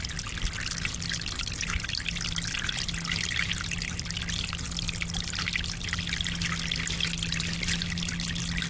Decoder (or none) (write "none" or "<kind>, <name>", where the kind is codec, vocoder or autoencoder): none